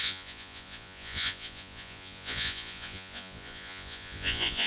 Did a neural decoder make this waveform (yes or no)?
yes